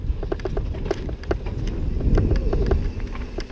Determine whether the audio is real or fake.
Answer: real